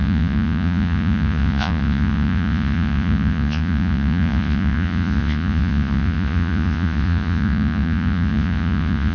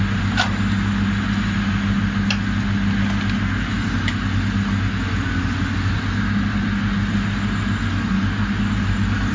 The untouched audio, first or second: second